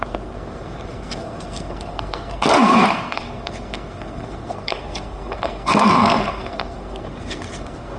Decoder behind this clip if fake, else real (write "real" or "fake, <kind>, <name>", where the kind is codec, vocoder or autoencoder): fake, codec, SNAC